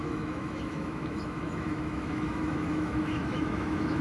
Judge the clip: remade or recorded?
remade